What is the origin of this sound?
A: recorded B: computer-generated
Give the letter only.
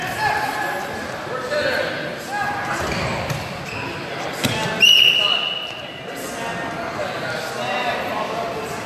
A